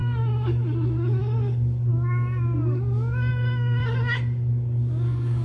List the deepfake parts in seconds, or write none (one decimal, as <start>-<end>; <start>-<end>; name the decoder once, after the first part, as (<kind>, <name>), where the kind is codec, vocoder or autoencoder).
0.0-5.4 (codec, DAC)

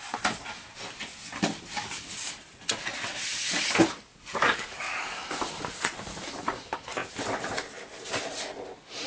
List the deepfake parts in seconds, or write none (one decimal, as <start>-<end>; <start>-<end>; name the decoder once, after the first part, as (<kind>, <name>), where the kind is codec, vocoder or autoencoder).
1.1-2.3 (codec, DAC); 4.1-5.3